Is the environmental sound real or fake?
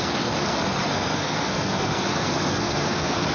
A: fake